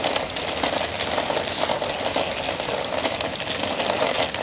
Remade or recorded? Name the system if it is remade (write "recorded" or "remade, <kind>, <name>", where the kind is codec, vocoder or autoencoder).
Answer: recorded